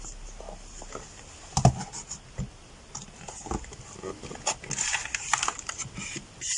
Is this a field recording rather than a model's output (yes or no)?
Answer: yes